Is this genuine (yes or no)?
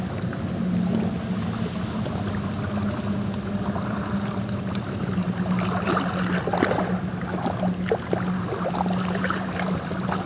yes